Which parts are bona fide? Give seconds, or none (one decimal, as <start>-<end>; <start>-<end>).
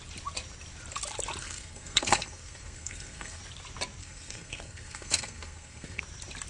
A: 0.0-1.4; 3.4-4.0; 6.0-6.5